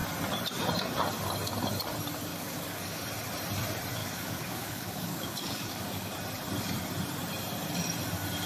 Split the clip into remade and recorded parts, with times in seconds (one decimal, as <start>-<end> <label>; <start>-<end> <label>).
0.0-2.3 recorded; 2.3-3.0 remade; 3.0-4.0 recorded; 4.0-6.1 remade; 6.1-8.5 recorded